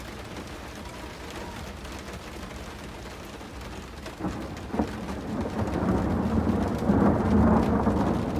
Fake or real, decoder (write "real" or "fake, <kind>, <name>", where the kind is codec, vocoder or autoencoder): real